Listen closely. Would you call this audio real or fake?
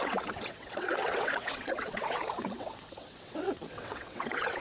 fake